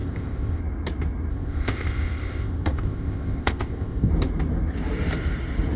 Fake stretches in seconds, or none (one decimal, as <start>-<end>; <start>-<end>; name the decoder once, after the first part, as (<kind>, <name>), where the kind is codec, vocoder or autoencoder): 0.0-0.6 (codec, ZipCodec); 1.3-4.1